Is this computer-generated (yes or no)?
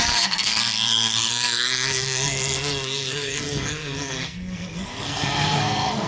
yes